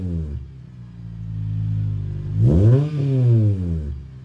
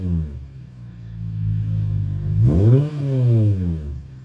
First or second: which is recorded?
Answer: first